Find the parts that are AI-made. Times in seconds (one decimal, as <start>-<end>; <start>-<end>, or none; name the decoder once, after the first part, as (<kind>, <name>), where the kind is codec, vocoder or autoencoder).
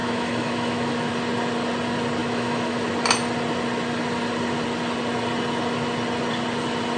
0.0-1.1 (autoencoder, DAC-VAE); 2.2-2.9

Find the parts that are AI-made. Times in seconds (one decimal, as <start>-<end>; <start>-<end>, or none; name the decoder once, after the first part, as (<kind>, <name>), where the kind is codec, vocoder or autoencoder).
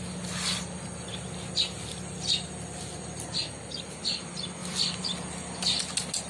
none